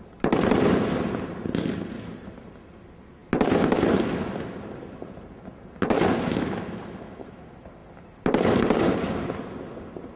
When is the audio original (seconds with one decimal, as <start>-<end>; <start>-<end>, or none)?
0.0-10.2